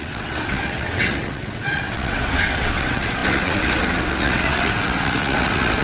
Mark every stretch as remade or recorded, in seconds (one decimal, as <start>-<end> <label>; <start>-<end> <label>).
0.0-5.8 remade